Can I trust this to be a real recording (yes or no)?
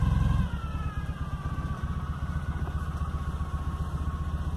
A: yes